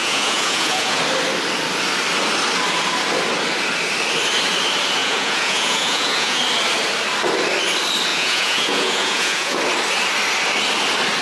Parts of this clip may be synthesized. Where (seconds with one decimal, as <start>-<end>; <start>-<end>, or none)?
0.0-1.0; 5.0-6.4; 8.1-9.6